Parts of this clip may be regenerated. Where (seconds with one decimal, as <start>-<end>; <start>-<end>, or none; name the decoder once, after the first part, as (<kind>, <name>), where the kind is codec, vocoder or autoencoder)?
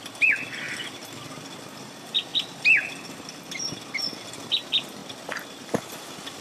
none